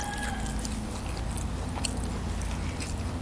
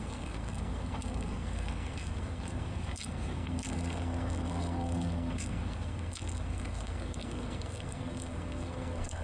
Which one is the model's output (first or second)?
second